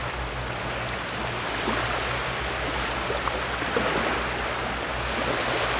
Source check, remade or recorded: recorded